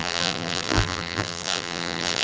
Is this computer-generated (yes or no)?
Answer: yes